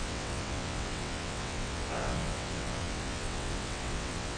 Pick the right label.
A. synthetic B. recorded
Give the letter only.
A